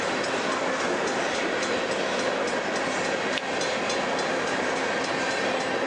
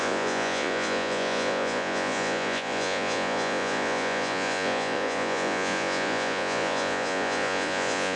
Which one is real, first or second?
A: first